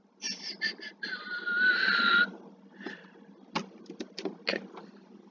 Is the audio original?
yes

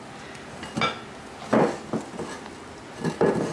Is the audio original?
yes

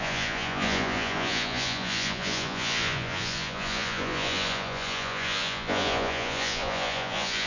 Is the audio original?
no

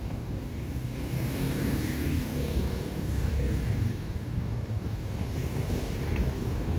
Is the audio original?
no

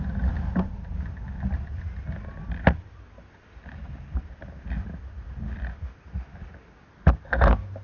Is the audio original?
yes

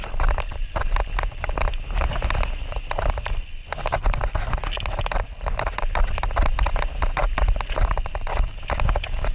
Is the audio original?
yes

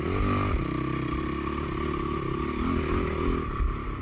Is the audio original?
yes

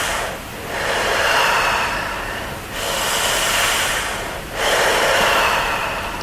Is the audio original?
yes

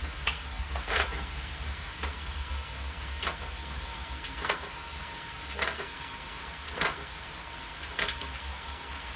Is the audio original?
no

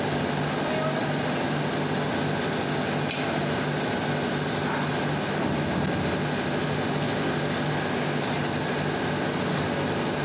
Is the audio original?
yes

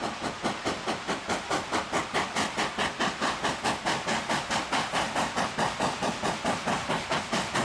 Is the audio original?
yes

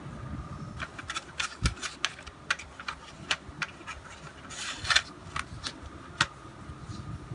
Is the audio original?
yes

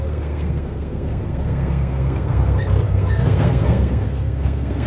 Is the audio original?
no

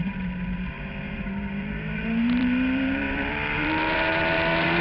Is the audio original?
no